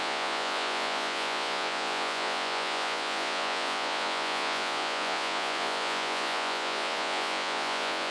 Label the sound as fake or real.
fake